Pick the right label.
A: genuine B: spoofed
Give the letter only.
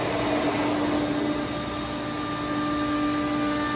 A